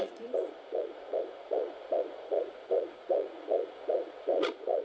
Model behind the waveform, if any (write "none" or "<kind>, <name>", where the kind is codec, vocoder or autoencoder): vocoder, Vocos